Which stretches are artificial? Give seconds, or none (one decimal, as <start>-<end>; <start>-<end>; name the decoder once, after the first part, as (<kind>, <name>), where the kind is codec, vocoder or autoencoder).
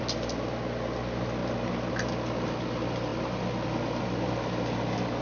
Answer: none